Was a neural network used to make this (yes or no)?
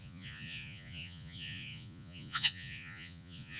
yes